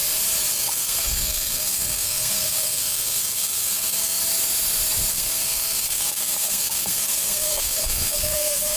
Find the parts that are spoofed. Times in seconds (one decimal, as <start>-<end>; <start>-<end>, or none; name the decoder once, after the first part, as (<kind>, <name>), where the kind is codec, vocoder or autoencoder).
0.5-4.2 (codec, SNAC); 5.1-8.8